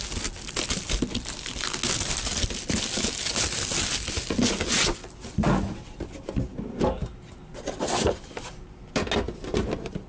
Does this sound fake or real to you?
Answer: real